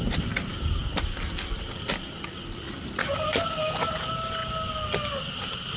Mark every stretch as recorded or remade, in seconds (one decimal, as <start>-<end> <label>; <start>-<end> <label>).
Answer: 0.0-5.8 recorded